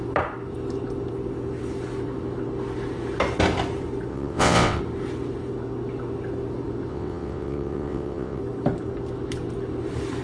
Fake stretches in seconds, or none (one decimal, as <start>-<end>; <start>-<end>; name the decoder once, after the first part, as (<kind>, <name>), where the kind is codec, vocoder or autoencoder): 4.1-4.8 (vocoder, WaveNeXt); 6.9-8.4